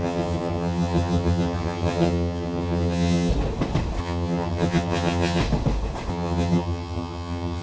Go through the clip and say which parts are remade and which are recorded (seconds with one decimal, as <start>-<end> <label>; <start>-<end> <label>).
0.0-3.3 remade; 3.3-4.0 recorded; 4.0-5.4 remade; 5.4-6.1 recorded; 6.1-7.6 remade